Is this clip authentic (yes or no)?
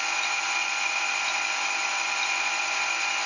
yes